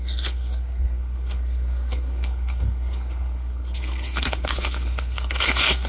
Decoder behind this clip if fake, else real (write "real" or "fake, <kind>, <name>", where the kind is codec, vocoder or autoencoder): fake, codec, SNAC